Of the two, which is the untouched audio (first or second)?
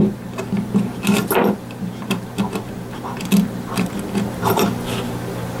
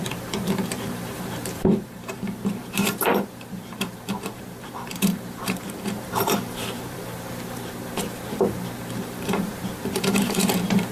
first